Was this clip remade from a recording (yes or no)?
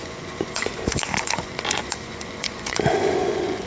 yes